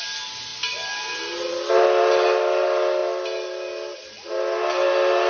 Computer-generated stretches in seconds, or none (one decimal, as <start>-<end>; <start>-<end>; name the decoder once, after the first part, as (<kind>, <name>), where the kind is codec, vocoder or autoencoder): none